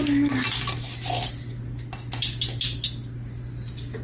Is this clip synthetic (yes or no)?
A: no